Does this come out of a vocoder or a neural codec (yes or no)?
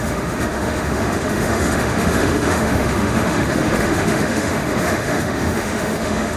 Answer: yes